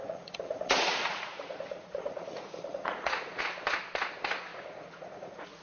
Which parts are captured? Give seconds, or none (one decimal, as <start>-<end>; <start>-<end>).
3.4-4.5

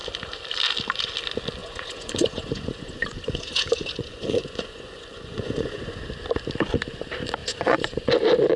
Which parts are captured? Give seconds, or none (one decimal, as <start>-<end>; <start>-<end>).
0.0-1.6; 6.0-7.4; 8.1-8.6

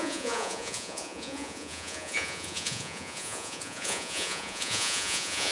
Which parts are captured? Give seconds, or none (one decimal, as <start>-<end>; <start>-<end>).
none

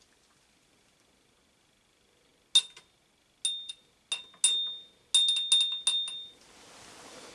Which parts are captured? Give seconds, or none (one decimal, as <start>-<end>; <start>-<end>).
0.0-7.3

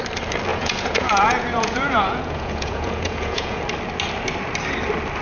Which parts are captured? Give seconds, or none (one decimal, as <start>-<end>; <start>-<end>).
0.0-0.5; 3.6-5.2